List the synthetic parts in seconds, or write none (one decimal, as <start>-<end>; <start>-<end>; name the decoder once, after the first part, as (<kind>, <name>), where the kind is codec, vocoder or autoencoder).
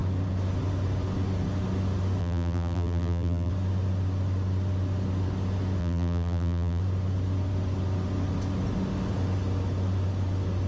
2.2-3.5 (vocoder, BigVGAN v2); 5.8-6.8